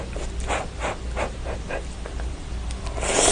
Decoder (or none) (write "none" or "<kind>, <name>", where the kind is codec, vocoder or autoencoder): none